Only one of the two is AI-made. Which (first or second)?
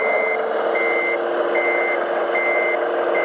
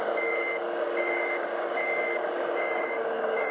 second